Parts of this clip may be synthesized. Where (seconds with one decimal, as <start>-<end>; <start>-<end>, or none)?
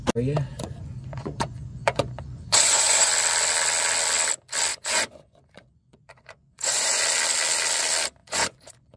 0.5-3.1; 4.7-7.0; 8.2-9.0